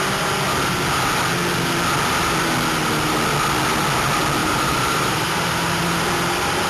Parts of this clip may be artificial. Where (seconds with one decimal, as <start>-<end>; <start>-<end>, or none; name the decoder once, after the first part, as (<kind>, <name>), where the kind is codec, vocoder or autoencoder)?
4.4-6.0 (vocoder, BigVGAN v2)